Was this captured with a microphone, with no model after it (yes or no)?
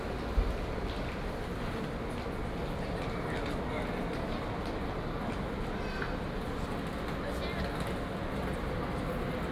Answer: yes